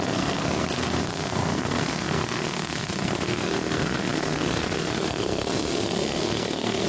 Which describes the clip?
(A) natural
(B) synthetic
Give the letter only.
B